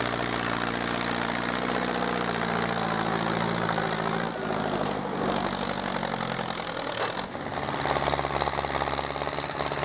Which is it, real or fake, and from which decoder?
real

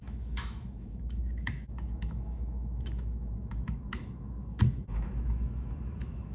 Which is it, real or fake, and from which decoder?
fake, autoencoder, DAC-VAE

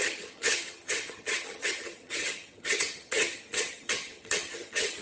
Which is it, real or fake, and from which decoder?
fake, vocoder, HiFi-GAN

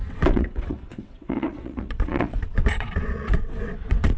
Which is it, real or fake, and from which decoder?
fake, vocoder, WaveNeXt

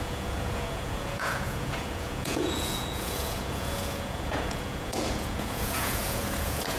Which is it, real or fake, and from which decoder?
fake, vocoder, Vocos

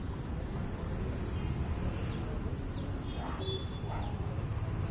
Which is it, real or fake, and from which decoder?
real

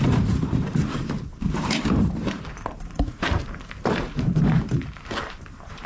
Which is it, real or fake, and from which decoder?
fake, vocoder, BigVGAN v2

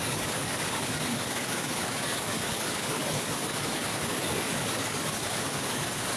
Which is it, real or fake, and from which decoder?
fake, codec, DAC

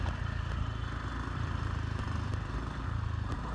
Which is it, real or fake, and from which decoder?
real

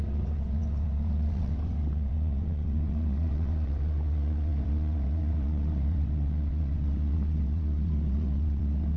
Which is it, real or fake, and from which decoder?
fake, vocoder, WaveNeXt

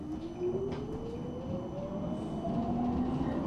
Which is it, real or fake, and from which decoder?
real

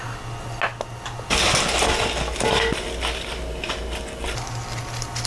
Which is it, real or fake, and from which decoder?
real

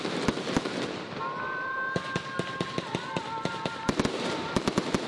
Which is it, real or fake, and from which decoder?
real